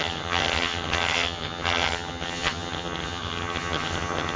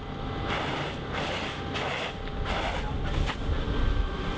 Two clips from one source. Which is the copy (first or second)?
first